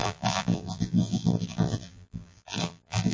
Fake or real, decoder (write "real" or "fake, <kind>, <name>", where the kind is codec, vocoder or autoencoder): fake, vocoder, BigVGAN v2